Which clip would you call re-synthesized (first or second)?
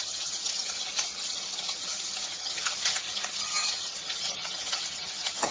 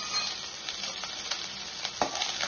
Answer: first